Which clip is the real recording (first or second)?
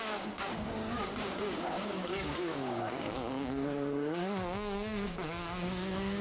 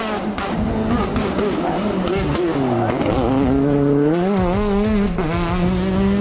second